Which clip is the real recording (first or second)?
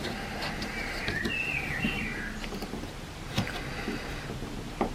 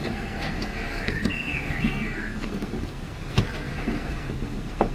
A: first